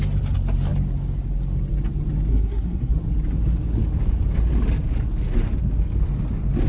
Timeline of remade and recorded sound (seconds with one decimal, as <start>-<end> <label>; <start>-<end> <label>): 0.0-2.3 recorded; 2.3-2.9 remade; 2.9-6.7 recorded